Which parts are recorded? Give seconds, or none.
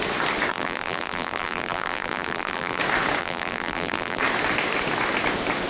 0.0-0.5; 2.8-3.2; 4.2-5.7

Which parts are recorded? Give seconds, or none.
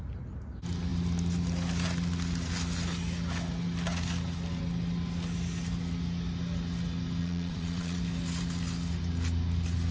0.0-7.2; 8.0-9.9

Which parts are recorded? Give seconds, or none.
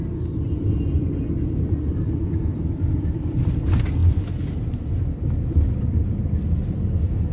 none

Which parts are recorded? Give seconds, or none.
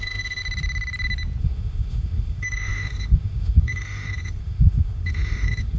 0.4-1.4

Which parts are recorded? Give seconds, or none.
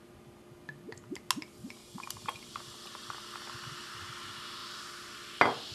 0.0-1.8; 2.5-5.7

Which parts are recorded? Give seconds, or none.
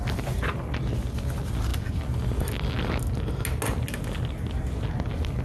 0.0-5.4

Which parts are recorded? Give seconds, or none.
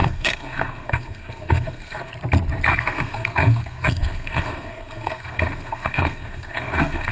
2.1-2.7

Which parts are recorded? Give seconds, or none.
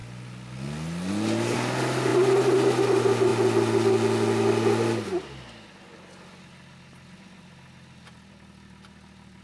0.0-9.4